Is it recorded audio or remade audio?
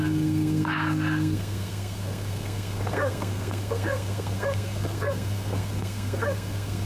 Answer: remade